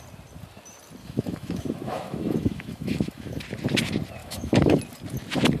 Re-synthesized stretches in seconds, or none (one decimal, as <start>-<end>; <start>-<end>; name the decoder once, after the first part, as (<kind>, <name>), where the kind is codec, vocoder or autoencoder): 1.0-3.4 (autoencoder, DAC-VAE); 4.2-4.8